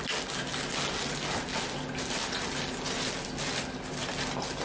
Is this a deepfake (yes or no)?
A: no